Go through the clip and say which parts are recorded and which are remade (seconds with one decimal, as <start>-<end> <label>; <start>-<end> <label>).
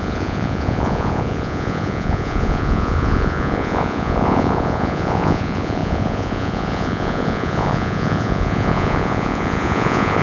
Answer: 0.0-10.2 remade